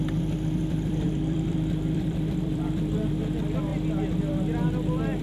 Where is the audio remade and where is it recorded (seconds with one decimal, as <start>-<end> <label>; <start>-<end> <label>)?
0.0-0.6 recorded; 0.6-3.1 remade; 3.1-5.2 recorded